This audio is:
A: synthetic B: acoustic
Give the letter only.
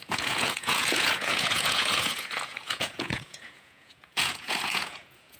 A